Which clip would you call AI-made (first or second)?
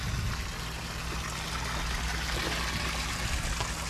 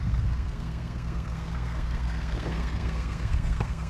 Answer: second